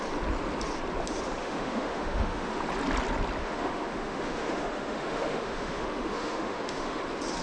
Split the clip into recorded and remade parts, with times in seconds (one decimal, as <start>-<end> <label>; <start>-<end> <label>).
0.0-1.4 recorded; 1.4-2.6 remade; 2.6-3.4 recorded; 3.4-7.0 remade; 7.0-7.4 recorded